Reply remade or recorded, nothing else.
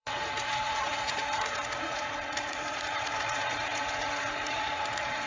remade